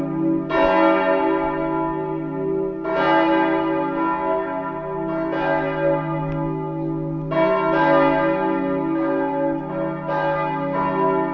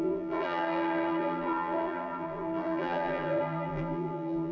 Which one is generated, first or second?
second